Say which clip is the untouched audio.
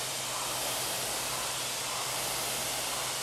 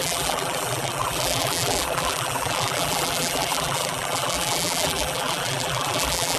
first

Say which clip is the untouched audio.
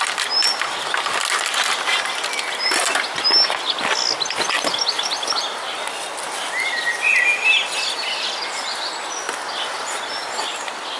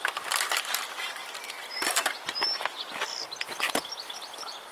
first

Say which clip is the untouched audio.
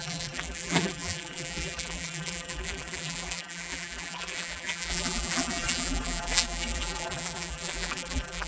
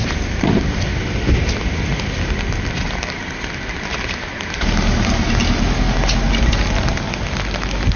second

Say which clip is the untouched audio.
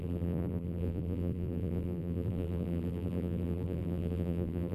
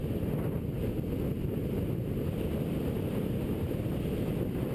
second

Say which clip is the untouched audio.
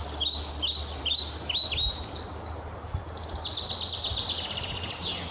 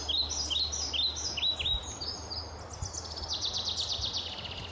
second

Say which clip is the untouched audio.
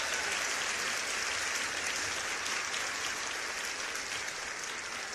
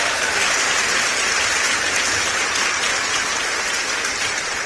first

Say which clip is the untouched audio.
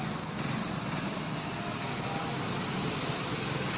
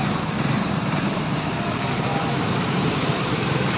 first